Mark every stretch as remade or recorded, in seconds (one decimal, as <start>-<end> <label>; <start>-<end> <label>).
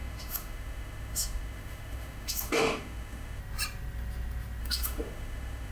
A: 0.0-3.4 remade; 3.4-4.6 recorded; 4.6-5.7 remade